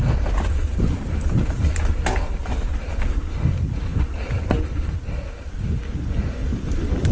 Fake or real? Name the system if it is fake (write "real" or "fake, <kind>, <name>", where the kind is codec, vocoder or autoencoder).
real